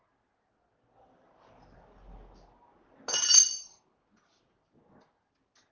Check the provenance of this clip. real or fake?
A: real